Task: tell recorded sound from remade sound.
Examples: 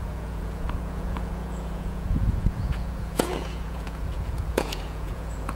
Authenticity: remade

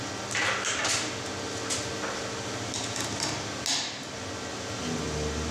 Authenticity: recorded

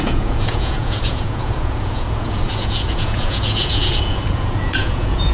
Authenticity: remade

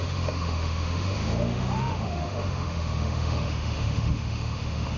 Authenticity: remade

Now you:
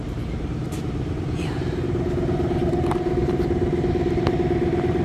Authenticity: remade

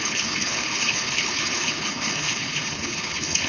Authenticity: remade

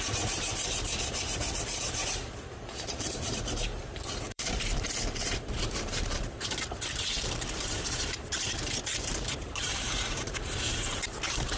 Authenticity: remade